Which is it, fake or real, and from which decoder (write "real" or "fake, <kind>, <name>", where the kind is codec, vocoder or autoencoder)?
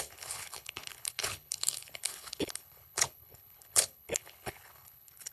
fake, codec, HILCodec